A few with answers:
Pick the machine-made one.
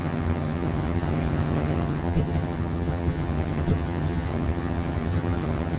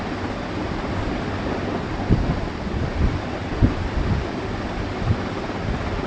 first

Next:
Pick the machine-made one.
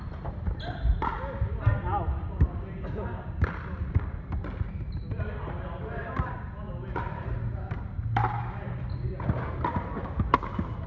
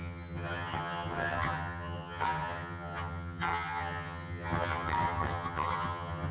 second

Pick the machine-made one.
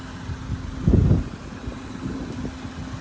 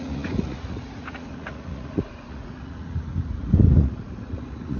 second